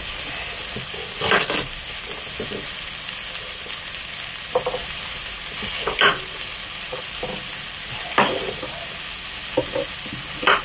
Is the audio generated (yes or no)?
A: no